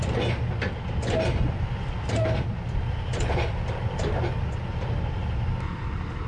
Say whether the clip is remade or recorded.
recorded